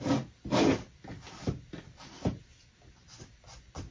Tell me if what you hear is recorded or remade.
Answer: recorded